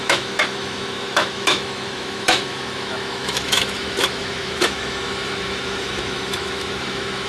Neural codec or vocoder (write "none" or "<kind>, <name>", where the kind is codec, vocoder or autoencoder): autoencoder, DAC-VAE